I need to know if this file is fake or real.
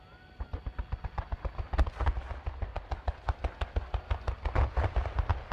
real